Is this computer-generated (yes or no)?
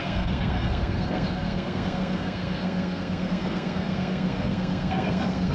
yes